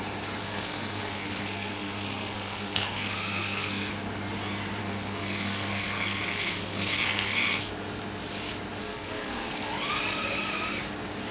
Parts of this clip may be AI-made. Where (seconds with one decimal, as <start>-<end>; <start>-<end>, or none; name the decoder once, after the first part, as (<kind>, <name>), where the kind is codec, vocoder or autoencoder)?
0.4-3.9 (codec, SNAC); 4.8-7.7; 8.8-9.5